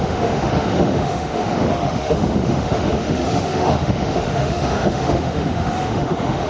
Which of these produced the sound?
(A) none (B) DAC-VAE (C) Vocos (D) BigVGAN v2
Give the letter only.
B